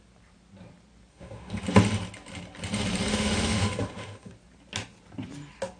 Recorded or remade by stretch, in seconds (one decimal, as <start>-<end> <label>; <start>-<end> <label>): 0.0-1.1 recorded; 1.1-1.6 remade; 1.6-3.1 recorded; 3.1-4.3 remade; 4.3-5.8 recorded